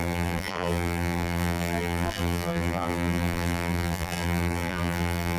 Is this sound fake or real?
fake